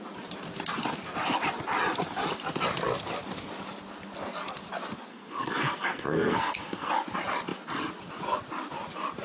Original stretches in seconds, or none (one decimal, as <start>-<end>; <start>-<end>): 0.0-5.1; 6.9-9.2